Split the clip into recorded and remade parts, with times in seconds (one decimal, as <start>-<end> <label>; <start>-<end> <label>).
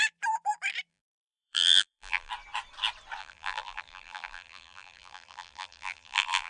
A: 0.0-0.9 recorded; 0.9-2.3 remade; 2.3-3.2 recorded; 3.2-6.5 remade